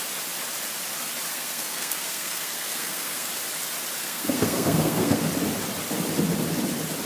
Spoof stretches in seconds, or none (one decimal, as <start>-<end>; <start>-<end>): 1.3-3.3; 4.0-5.3